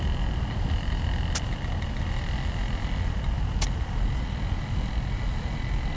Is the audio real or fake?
real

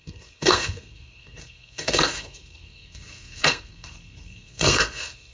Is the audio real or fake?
fake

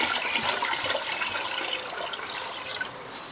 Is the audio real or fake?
fake